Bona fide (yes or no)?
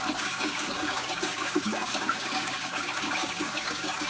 no